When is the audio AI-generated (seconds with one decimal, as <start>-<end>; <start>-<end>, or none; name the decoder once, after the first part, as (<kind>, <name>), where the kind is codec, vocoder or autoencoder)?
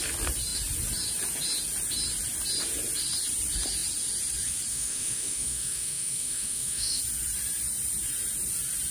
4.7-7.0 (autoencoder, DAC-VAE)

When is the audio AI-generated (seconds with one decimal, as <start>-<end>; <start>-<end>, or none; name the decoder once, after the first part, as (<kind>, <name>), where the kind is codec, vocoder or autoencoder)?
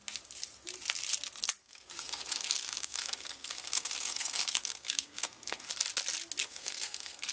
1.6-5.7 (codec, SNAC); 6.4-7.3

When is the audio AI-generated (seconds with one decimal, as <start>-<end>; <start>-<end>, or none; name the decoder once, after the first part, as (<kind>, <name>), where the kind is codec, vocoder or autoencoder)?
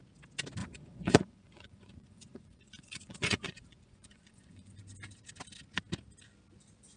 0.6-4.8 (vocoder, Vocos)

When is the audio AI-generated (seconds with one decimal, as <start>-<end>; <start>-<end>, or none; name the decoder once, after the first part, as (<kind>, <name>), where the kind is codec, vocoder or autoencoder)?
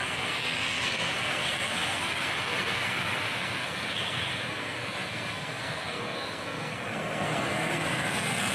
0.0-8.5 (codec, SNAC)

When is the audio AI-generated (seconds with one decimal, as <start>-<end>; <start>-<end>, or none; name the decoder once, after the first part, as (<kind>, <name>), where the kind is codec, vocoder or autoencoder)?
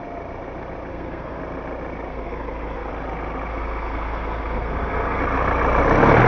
0.9-1.4 (codec, SNAC); 2.1-2.9; 3.5-5.2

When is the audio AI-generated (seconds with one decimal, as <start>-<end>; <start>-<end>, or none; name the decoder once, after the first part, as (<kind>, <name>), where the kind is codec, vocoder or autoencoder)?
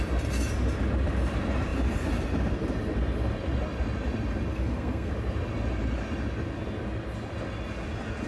4.5-5.1 (codec, SNAC)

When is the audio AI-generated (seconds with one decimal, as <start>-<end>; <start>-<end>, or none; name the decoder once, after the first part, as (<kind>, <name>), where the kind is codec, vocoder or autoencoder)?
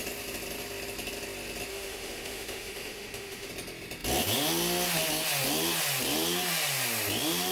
1.7-3.5 (autoencoder, DAC-VAE)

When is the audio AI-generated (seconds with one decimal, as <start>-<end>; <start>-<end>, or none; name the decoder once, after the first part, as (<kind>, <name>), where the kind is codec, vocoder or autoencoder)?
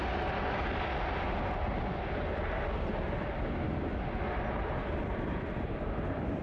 none